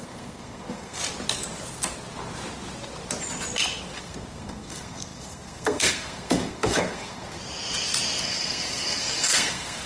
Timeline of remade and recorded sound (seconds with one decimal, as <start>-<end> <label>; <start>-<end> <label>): 0.0-1.0 remade; 1.0-4.0 recorded; 4.0-7.4 remade; 7.4-8.2 recorded; 8.2-9.9 remade